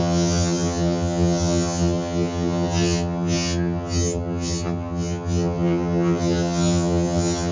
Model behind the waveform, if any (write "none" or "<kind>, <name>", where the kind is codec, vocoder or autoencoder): vocoder, HiFi-GAN